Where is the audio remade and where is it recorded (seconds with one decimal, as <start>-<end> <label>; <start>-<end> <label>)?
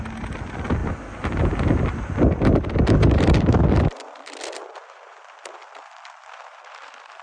0.0-7.2 recorded